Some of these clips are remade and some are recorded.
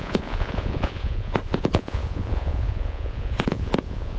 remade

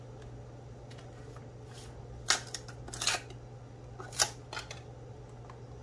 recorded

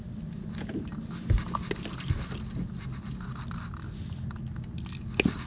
recorded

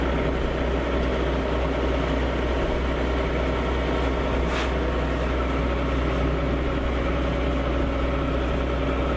recorded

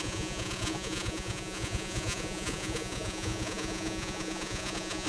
remade